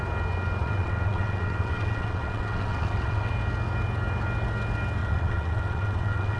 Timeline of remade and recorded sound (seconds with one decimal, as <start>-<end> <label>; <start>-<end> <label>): 0.0-0.6 recorded; 0.6-3.3 remade; 3.3-5.0 recorded; 5.0-6.4 remade